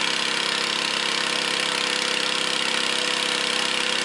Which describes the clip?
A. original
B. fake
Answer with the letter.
A